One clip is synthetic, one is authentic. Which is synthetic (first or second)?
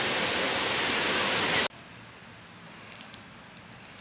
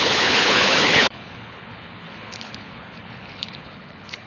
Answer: second